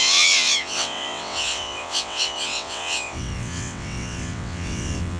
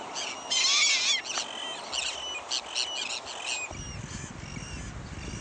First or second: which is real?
second